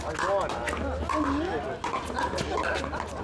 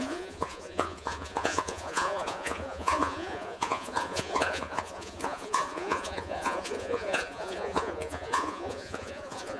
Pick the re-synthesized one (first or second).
second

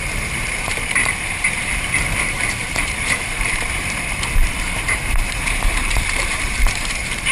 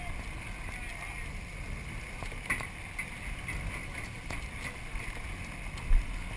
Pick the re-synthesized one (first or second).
first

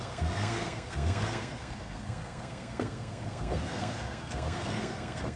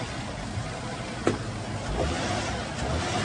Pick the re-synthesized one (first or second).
first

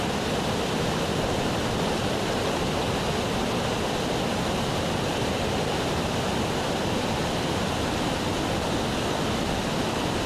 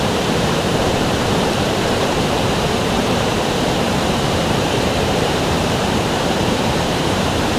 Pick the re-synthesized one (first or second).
second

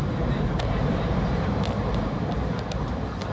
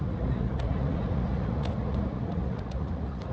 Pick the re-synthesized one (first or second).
second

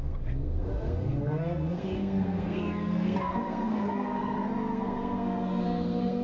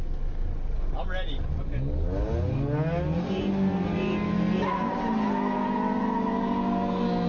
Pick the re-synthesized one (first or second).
first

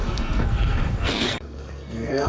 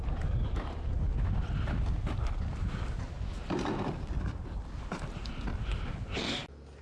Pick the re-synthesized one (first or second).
first